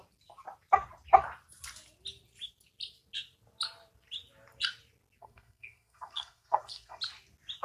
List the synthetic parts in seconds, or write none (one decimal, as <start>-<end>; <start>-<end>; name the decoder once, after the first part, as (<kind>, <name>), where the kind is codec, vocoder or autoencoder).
5.2-7.0 (codec, SNAC)